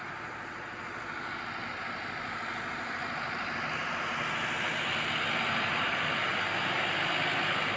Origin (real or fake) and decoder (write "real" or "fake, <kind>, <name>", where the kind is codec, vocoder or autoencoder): real